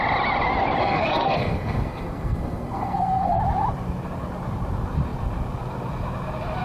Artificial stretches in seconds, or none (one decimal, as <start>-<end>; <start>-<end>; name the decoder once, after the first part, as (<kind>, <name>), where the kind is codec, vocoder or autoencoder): 0.8-3.4 (codec, SNAC)